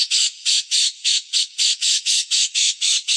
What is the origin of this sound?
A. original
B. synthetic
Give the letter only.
B